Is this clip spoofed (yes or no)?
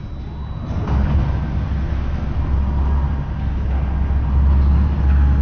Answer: no